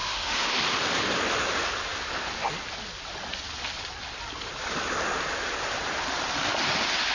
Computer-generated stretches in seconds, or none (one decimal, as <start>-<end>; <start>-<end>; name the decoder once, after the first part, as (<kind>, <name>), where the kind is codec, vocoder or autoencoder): 0.0-0.6 (autoencoder, DAC-VAE)

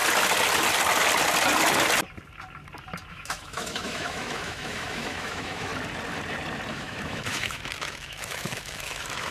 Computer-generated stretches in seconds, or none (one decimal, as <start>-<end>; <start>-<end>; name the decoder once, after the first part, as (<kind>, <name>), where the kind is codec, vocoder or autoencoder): 3.1-5.7 (autoencoder, DAC-VAE); 6.7-9.3

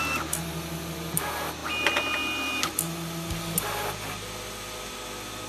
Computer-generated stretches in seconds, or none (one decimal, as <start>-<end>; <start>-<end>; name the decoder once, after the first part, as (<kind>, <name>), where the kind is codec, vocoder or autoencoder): none

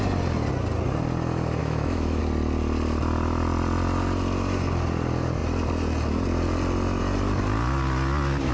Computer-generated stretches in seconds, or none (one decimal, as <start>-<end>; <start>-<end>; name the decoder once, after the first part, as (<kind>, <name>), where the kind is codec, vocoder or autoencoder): 1.6-2.2 (autoencoder, DAC-VAE)

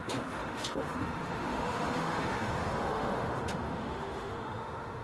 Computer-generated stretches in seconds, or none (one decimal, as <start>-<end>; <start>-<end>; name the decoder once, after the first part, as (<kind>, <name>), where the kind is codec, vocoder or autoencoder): 0.0-5.0 (autoencoder, DAC-VAE)